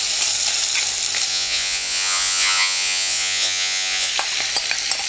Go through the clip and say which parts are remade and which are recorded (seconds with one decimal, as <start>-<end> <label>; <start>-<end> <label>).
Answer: 0.0-1.3 recorded; 1.3-4.1 remade; 4.1-5.1 recorded